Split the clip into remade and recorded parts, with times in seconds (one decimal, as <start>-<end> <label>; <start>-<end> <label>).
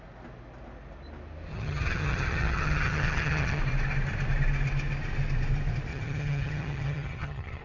0.0-1.5 recorded; 1.5-3.6 remade; 3.6-5.9 recorded; 5.9-7.6 remade